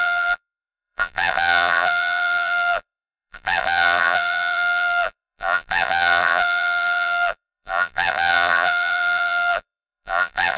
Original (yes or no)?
no